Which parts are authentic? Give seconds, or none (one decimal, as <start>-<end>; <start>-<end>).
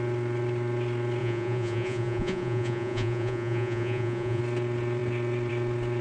0.0-1.2; 4.4-6.0